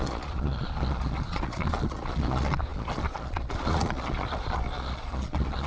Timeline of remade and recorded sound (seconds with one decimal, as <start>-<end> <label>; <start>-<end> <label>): 0.0-5.7 remade